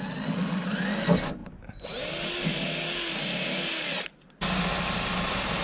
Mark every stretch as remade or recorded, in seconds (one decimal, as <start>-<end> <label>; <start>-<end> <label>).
0.0-5.6 recorded